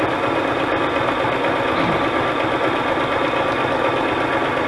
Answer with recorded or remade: recorded